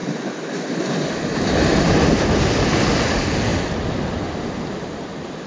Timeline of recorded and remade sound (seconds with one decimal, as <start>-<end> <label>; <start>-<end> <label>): 0.0-2.8 remade; 2.8-5.5 recorded